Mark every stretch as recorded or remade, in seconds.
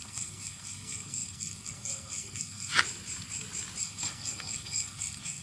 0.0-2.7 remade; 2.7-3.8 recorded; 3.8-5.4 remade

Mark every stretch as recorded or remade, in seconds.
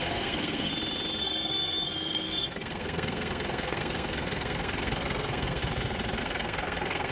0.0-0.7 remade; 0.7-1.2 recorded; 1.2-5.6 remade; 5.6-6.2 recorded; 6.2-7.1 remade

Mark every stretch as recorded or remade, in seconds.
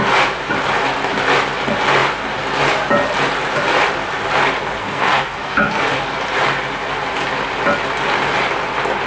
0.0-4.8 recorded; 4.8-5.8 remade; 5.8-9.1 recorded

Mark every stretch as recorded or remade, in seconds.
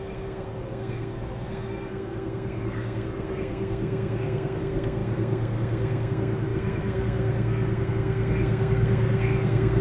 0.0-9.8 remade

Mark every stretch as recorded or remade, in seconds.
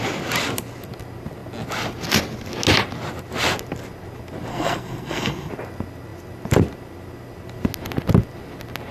0.0-4.5 recorded; 4.5-5.5 remade; 5.5-8.9 recorded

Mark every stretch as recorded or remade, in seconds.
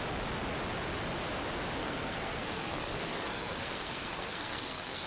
0.0-1.8 recorded; 1.8-5.1 remade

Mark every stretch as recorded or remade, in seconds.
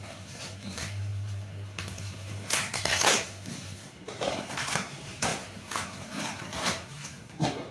0.0-7.7 remade